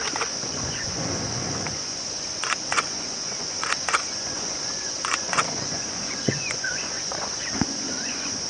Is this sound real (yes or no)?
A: no